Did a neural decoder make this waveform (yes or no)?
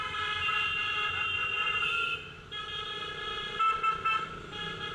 no